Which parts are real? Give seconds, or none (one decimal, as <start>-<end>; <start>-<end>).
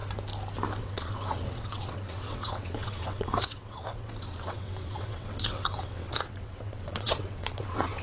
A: 0.0-0.8